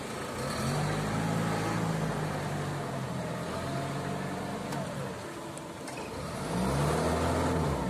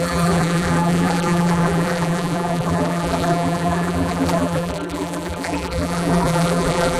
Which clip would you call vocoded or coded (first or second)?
second